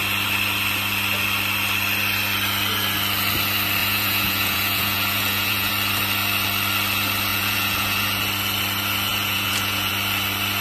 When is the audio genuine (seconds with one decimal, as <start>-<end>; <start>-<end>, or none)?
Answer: 0.0-3.8; 5.7-7.3; 8.2-9.1; 9.9-10.6